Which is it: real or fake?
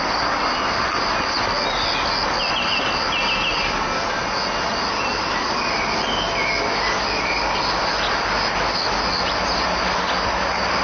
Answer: real